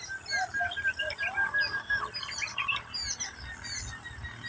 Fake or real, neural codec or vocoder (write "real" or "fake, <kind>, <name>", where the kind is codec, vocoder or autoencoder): real